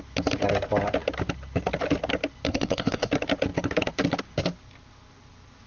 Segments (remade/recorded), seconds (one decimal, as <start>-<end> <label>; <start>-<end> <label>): 0.0-2.5 recorded; 2.5-3.1 remade; 3.1-5.7 recorded